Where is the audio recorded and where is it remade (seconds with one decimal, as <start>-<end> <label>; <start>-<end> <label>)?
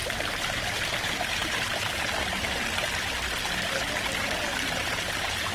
0.0-2.4 remade; 2.4-4.8 recorded; 4.8-5.5 remade